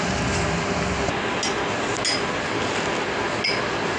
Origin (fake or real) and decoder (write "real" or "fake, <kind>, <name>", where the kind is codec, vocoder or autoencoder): real